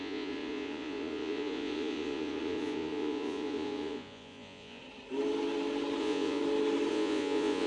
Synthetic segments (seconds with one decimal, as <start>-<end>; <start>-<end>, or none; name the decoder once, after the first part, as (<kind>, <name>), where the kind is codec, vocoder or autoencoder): 0.0-4.8 (vocoder, Vocos); 6.0-6.4; 6.9-7.7